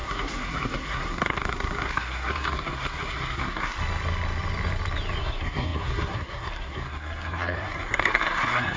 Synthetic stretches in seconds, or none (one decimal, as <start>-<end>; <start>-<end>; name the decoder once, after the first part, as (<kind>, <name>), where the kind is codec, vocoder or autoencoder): 0.0-3.8 (codec, SNAC); 5.2-8.8